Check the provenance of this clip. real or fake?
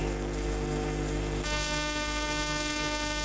fake